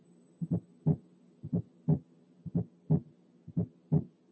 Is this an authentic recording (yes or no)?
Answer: yes